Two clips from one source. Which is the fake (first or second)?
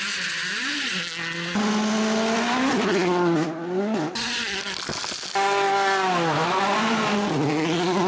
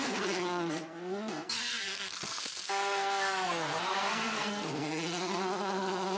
second